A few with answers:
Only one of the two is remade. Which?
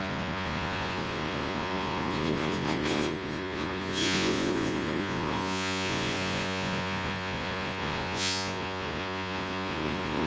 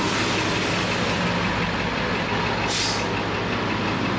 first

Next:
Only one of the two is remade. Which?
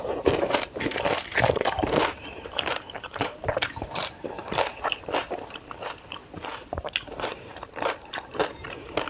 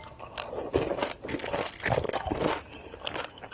first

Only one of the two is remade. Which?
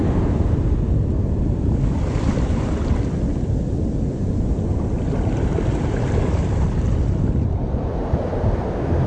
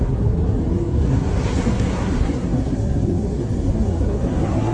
second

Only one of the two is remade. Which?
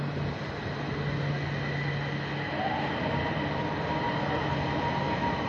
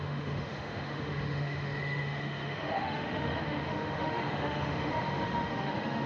second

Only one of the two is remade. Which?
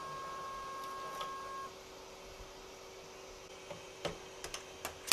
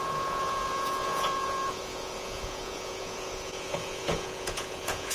second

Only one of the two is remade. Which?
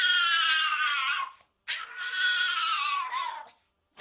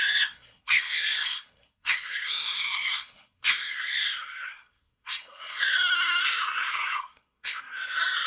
second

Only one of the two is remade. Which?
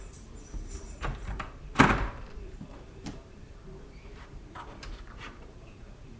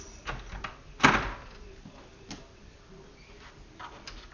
first